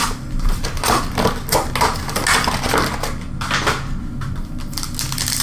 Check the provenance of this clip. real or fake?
real